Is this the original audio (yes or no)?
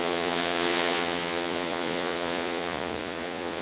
no